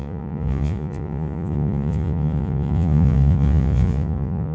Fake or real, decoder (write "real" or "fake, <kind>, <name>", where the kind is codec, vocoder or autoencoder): fake, vocoder, Vocos